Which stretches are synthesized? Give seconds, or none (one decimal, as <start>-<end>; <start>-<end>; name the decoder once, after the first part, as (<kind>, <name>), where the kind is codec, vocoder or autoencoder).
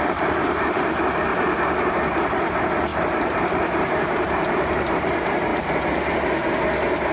0.0-1.3 (vocoder, BigVGAN v2); 1.9-5.5